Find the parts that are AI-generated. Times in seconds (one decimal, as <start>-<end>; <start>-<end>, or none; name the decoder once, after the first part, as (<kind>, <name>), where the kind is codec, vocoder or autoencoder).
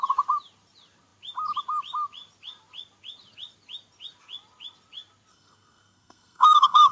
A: 5.3-6.9 (codec, SNAC)